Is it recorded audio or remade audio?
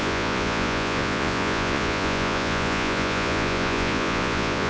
remade